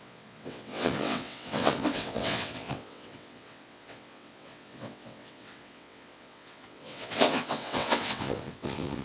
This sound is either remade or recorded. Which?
remade